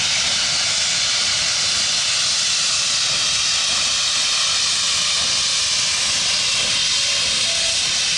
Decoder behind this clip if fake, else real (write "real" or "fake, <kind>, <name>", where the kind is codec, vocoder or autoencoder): real